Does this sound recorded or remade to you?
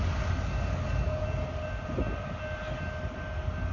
recorded